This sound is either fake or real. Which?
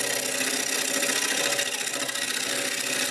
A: real